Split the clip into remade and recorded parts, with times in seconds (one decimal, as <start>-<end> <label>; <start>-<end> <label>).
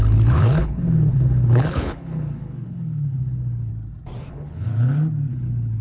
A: 0.0-3.7 remade; 3.7-4.3 recorded; 4.3-4.7 remade; 4.7-5.3 recorded; 5.3-5.8 remade